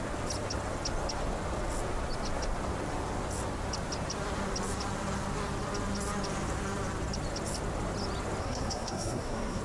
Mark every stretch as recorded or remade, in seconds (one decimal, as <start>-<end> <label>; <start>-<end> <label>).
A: 0.0-8.4 recorded; 8.4-9.6 remade